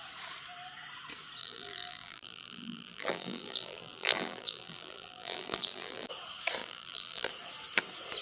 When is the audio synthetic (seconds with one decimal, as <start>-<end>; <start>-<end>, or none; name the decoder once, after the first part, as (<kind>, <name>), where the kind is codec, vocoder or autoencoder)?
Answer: 1.4-6.1 (vocoder, BigVGAN v2); 6.6-7.3